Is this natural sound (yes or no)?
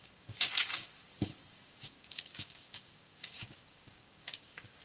no